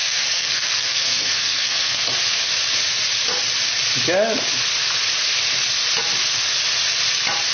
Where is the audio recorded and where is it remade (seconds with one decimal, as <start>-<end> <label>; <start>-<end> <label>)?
0.0-2.0 remade; 2.0-7.5 recorded